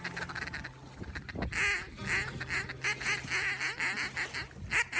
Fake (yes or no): no